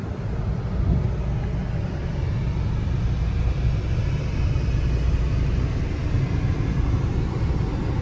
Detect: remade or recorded recorded